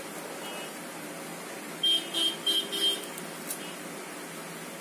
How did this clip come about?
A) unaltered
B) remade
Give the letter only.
A